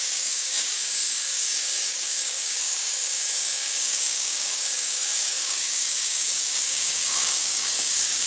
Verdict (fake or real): fake